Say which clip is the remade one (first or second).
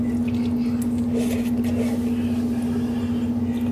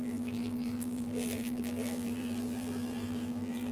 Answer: second